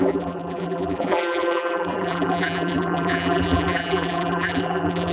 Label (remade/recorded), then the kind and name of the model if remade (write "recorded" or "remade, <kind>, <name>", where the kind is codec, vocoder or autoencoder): remade, vocoder, BigVGAN v2